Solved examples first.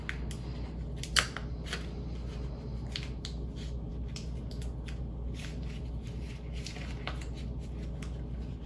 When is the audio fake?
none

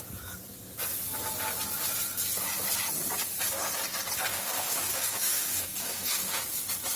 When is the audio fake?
4.3-6.4

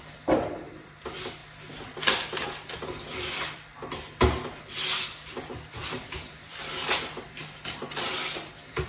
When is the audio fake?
0.0-1.4; 2.7-3.7; 4.5-8.9

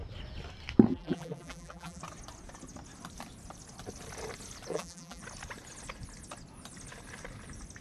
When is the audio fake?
0.9-2.0; 4.7-5.2

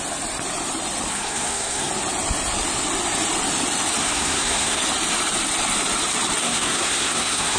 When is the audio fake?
1.1-1.9; 4.0-4.8; 6.4-7.6

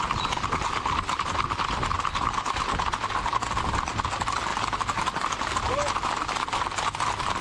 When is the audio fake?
none